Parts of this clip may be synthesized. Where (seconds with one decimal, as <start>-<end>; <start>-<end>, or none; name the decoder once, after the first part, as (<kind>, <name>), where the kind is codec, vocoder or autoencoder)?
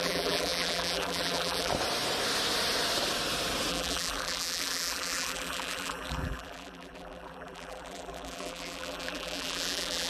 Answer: 0.0-1.7 (vocoder, BigVGAN v2); 3.7-10.1